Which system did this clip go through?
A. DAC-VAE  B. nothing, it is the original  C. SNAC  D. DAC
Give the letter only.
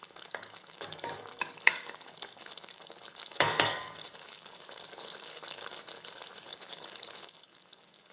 D